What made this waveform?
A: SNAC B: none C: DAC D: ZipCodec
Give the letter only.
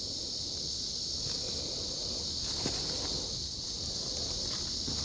B